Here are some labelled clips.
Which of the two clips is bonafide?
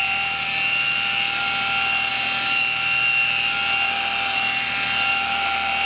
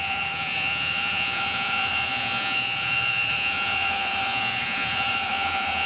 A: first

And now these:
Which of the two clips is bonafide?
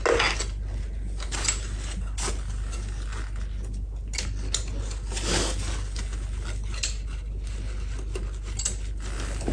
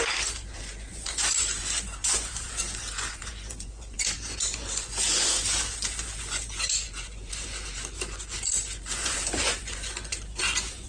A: first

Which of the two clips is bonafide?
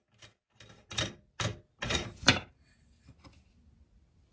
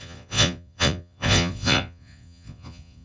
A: first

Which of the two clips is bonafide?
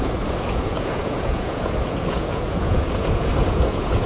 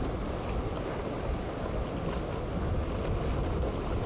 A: second